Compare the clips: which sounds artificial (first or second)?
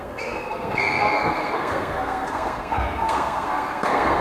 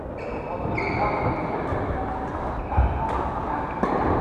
first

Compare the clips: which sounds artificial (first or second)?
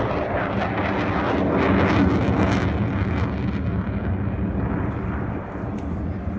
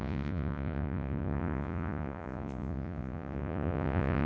second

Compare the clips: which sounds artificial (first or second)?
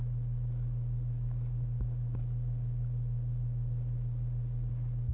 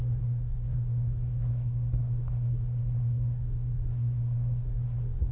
second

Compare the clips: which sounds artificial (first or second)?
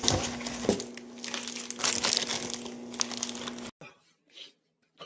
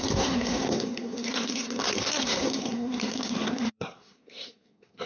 second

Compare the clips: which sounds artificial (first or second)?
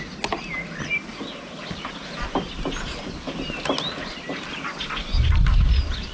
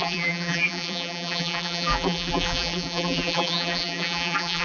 second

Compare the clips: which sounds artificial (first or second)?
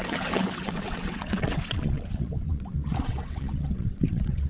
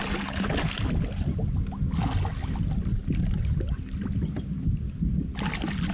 first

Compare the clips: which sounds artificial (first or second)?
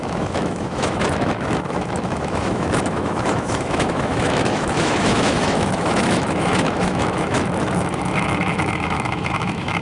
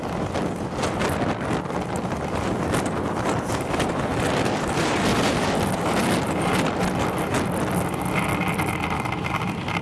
first